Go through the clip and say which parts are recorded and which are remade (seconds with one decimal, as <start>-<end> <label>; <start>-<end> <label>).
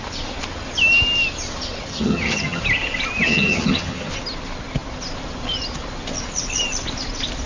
0.0-1.9 recorded; 1.9-2.6 remade; 2.6-3.3 recorded; 3.3-4.1 remade; 4.1-7.5 recorded